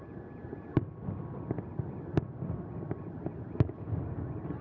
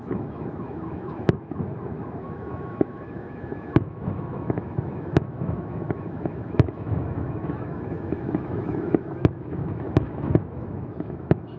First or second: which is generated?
second